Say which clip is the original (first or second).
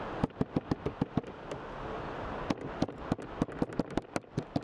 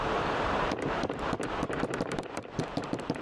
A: first